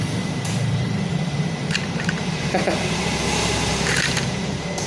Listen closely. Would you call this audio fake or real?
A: fake